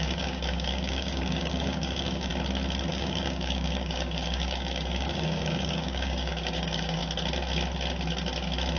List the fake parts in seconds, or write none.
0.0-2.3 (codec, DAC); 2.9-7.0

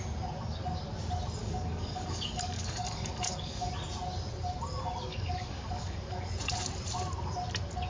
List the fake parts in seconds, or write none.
1.4-3.7 (codec, DAC); 5.1-6.3

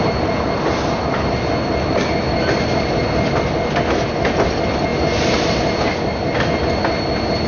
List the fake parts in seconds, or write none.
none

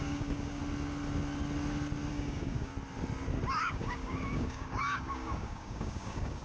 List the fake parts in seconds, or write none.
0.0-0.6 (codec, DAC); 2.1-2.7; 3.6-6.4